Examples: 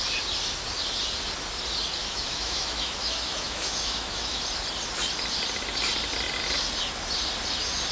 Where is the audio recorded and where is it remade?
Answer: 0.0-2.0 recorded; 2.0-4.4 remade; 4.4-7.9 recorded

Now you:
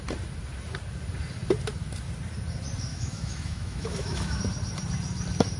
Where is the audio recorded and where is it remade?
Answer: 0.0-2.9 recorded; 2.9-4.4 remade; 4.4-5.6 recorded

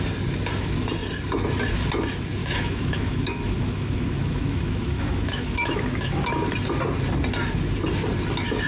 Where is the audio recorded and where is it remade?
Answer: 0.0-2.4 recorded; 2.4-6.3 remade; 6.3-8.7 recorded

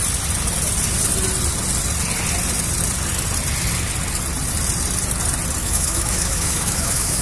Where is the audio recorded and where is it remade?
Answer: 0.0-5.6 recorded; 5.6-7.2 remade

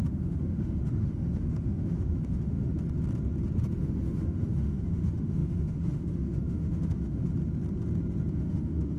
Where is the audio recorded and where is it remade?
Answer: 0.0-2.7 remade; 2.7-3.6 recorded; 3.6-7.3 remade; 7.3-8.3 recorded; 8.3-9.0 remade